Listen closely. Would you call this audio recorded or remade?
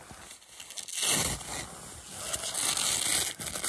recorded